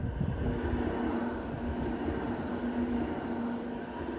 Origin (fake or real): real